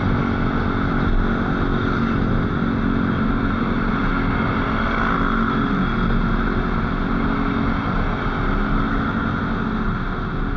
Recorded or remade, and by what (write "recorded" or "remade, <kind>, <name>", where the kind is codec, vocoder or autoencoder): recorded